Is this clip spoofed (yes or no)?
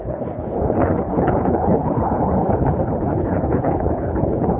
yes